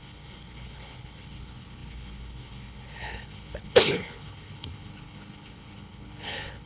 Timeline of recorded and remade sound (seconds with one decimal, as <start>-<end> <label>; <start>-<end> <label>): 0.0-6.7 remade